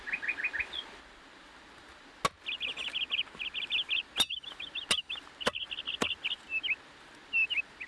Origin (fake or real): real